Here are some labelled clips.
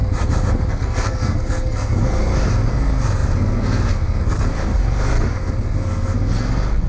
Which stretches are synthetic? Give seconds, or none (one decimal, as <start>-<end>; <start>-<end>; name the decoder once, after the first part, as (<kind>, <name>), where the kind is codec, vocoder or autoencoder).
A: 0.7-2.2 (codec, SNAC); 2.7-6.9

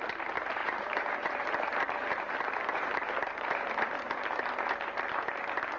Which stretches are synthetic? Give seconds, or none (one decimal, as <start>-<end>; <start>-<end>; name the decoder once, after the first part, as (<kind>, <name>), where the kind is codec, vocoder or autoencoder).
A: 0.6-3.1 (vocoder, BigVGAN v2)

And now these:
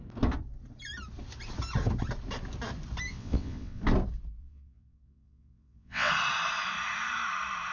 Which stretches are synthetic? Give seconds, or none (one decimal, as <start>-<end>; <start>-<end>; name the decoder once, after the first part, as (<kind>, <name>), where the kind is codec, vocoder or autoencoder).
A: 3.1-3.8 (vocoder, WaveNeXt); 4.4-6.1

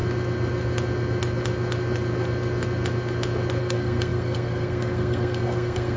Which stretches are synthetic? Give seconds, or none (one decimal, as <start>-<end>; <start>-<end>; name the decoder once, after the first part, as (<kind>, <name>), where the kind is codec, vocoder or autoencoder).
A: 3.6-6.0 (codec, SNAC)

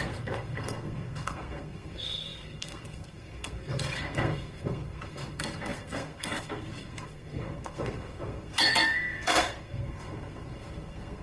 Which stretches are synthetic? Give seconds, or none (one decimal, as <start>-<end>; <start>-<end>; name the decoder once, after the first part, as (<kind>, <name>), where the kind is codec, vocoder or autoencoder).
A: 0.0-11.2 (codec, SNAC)

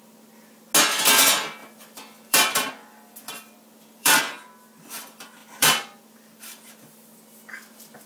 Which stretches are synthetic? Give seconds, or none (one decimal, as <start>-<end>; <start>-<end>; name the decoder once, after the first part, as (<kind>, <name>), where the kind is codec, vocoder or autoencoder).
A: 1.6-4.2 (vocoder, BigVGAN v2); 5.4-6.8

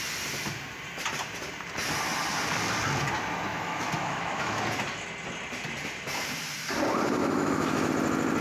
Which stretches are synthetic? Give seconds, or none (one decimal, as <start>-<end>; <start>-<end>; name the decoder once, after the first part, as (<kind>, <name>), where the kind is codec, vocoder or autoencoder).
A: 3.5-4.6 (autoencoder, DAC-VAE); 7.2-7.9

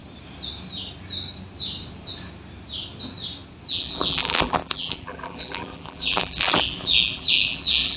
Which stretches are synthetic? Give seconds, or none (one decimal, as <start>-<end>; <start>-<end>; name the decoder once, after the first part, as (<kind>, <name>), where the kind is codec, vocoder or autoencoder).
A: 3.7-8.0 (vocoder, BigVGAN v2)